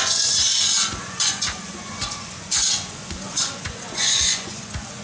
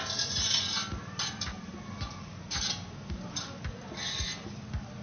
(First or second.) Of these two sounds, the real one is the second